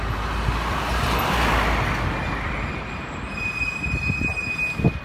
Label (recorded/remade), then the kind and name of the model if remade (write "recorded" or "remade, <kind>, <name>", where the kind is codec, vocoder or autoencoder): recorded